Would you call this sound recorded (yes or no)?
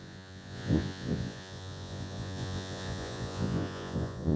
no